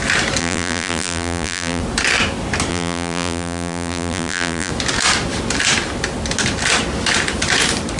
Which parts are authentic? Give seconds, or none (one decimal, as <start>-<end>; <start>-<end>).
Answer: 0.0-0.4; 1.8-2.7; 4.7-8.0